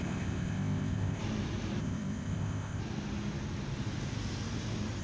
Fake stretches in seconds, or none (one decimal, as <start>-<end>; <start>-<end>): 0.0-1.2; 1.8-2.8